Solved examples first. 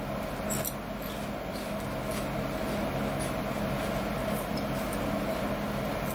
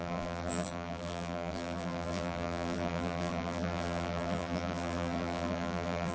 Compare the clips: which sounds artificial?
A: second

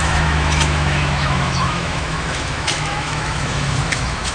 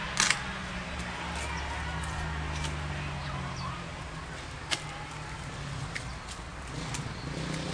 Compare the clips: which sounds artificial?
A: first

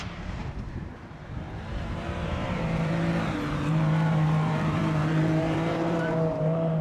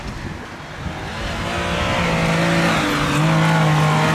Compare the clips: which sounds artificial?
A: first